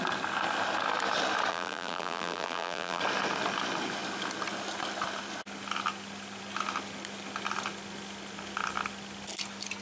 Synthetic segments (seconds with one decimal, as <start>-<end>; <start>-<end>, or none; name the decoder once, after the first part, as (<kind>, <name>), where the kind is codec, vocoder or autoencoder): 1.5-3.0 (vocoder, BigVGAN v2)